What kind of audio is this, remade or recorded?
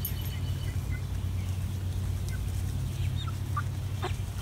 recorded